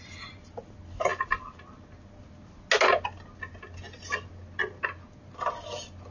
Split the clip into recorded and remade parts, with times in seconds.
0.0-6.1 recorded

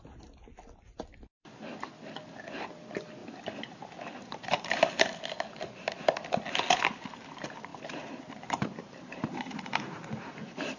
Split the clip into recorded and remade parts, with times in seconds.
0.0-3.2 recorded; 3.2-4.7 remade; 4.7-7.7 recorded; 7.7-10.8 remade

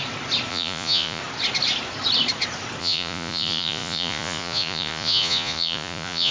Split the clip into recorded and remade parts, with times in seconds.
0.0-0.5 recorded; 0.5-1.2 remade; 1.2-2.8 recorded; 2.8-6.3 remade

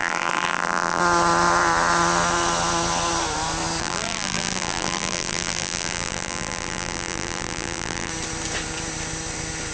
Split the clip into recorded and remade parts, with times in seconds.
0.0-1.0 remade; 1.0-3.8 recorded; 3.8-8.1 remade; 8.1-9.7 recorded

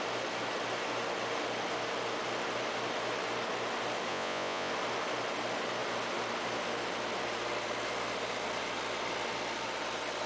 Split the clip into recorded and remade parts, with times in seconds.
0.0-4.1 recorded; 4.1-4.7 remade; 4.7-10.3 recorded

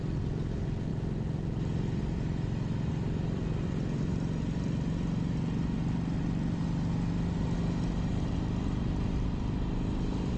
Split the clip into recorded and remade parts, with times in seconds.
0.0-10.4 recorded